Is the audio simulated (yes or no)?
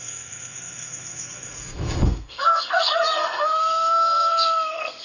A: yes